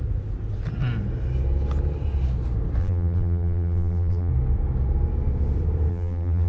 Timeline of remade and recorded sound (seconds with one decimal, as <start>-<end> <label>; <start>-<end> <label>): 0.0-2.8 recorded; 2.8-4.3 remade; 4.3-5.9 recorded; 5.9-6.5 remade